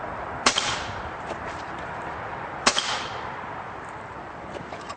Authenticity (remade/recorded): remade